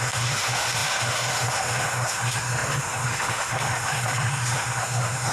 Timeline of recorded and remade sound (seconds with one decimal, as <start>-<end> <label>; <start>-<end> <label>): 0.0-5.3 remade